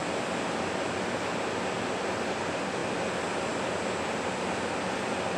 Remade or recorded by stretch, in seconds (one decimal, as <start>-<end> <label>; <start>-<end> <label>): 0.0-5.4 recorded